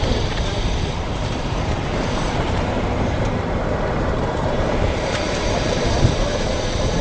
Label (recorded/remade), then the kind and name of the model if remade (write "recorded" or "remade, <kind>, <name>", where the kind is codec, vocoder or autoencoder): remade, vocoder, BigVGAN v2